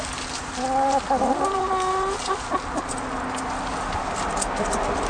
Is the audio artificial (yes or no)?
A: no